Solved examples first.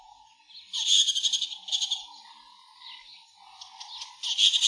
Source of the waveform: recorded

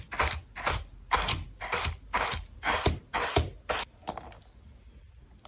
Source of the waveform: recorded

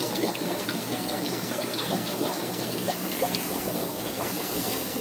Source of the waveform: remade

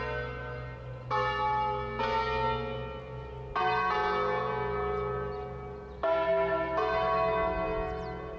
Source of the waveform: recorded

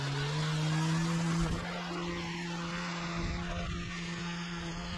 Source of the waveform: recorded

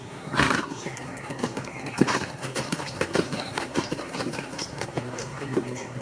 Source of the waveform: remade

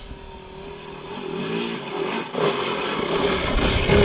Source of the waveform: recorded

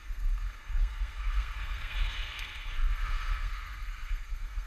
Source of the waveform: remade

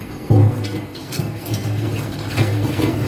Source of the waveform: remade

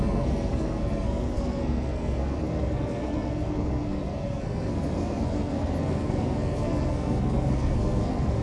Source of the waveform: remade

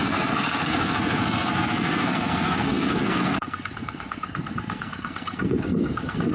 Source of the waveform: remade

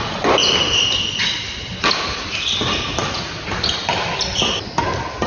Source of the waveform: recorded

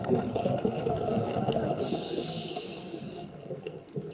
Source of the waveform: remade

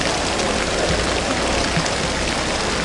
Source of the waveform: recorded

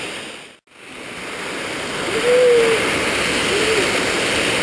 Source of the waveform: recorded